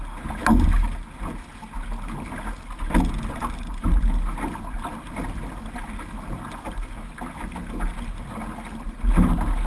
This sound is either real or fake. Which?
real